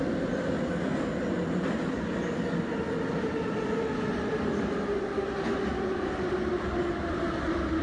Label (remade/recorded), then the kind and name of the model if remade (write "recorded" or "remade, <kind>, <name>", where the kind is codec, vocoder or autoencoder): recorded